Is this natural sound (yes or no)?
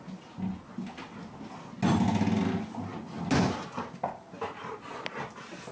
yes